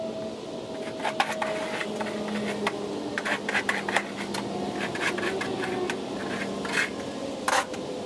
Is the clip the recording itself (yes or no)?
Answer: yes